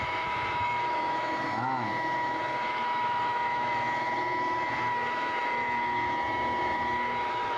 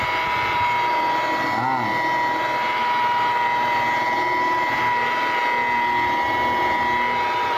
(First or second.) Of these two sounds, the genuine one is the second